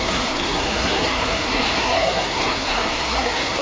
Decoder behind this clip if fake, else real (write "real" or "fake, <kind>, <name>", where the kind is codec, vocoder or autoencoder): fake, codec, SNAC